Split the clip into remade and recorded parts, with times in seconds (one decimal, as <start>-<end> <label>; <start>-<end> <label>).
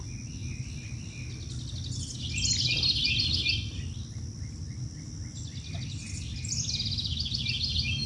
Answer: 0.0-8.1 recorded